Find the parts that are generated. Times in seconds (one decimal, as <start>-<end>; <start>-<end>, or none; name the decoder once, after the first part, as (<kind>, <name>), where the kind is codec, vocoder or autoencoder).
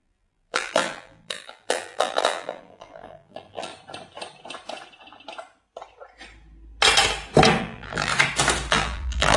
0.0-3.7 (vocoder, BigVGAN v2); 7.6-8.1; 8.7-9.4